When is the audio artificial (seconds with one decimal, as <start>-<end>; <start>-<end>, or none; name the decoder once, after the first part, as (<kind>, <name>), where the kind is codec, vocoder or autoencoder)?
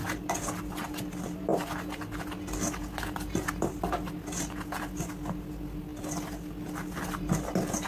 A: none